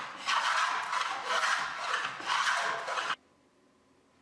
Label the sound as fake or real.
real